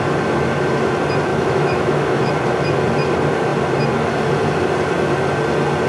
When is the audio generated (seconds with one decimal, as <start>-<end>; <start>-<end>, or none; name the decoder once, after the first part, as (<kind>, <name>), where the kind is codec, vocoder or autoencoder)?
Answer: 1.3-2.3 (autoencoder, DAC-VAE)